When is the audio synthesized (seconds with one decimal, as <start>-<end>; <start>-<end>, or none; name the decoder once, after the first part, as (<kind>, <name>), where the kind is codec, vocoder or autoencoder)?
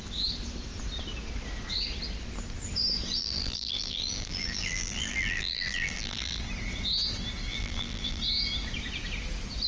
3.2-6.4 (vocoder, BigVGAN v2); 7.5-8.2